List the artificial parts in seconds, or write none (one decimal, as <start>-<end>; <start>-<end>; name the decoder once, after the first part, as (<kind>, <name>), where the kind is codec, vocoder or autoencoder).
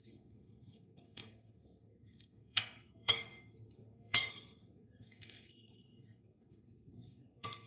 0.0-7.7 (codec, SNAC)